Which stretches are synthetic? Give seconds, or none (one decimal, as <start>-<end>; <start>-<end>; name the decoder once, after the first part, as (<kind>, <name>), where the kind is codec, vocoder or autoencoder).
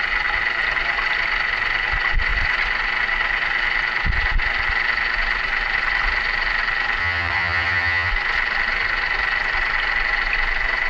7.0-8.1 (vocoder, HiFi-GAN)